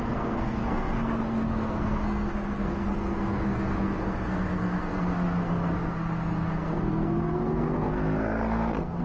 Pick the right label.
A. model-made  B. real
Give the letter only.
A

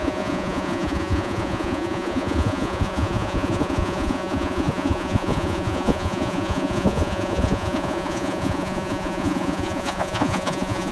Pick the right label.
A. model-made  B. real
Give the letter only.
A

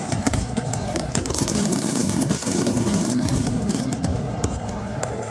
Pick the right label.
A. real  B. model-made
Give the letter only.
B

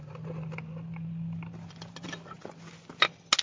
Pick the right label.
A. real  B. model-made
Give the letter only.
A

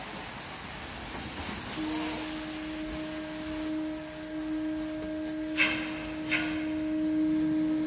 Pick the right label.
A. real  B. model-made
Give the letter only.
A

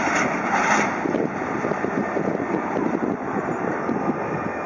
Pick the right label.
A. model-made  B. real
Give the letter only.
A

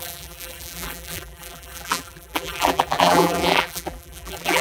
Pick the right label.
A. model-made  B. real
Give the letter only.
A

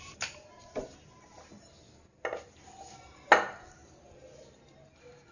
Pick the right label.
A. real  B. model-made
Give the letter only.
A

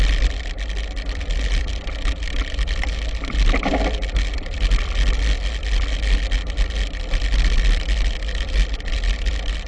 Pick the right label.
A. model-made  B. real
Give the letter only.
B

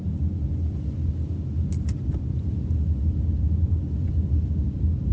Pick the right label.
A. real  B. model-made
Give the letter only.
A